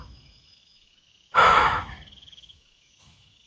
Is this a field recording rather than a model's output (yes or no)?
no